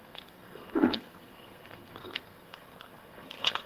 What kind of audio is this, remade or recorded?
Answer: remade